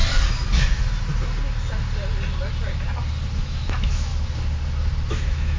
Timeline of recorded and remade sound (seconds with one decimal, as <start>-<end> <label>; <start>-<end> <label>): 0.0-3.4 recorded; 3.4-4.1 remade; 4.1-5.1 recorded; 5.1-5.6 remade